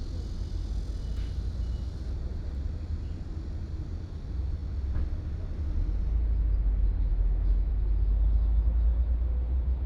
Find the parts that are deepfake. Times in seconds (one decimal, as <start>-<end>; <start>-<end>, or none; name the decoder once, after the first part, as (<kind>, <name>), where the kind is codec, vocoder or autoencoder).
7.1-7.7 (autoencoder, DAC-VAE)